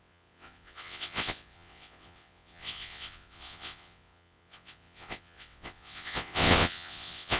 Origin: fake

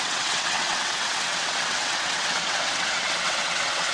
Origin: fake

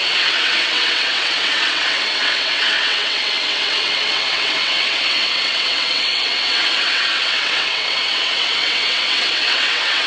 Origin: fake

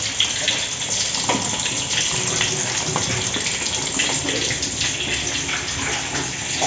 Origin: real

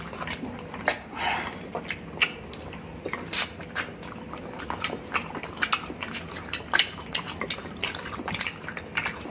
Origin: real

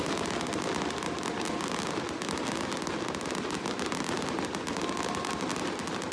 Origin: real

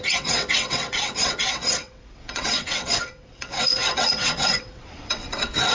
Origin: fake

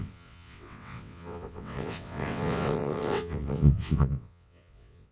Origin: fake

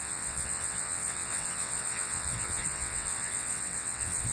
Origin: fake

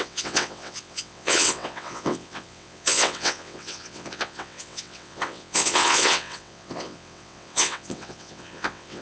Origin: fake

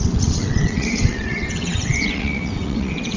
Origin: fake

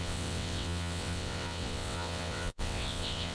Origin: fake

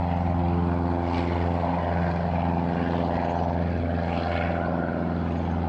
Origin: real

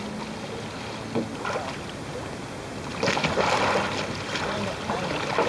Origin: real